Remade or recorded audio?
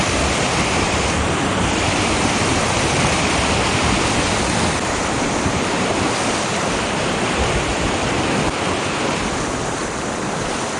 remade